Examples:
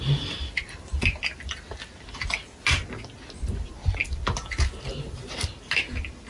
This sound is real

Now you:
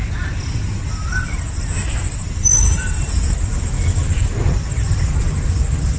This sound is real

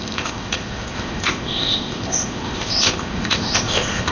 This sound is fake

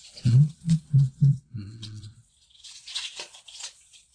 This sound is fake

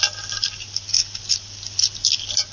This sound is real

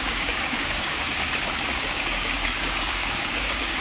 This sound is fake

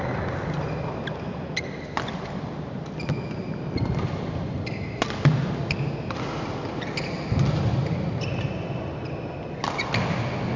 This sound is real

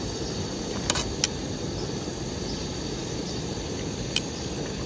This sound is real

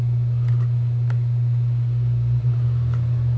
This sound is real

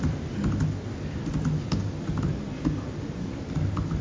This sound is real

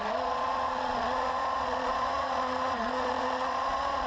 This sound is fake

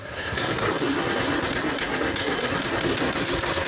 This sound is fake